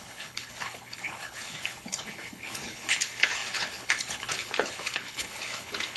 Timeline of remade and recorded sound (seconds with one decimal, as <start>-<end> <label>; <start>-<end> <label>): 0.0-6.0 remade